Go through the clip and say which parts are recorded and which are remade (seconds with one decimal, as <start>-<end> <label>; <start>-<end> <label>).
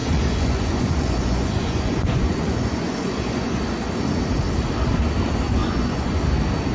0.0-3.6 remade; 3.6-5.6 recorded; 5.6-6.2 remade; 6.2-6.7 recorded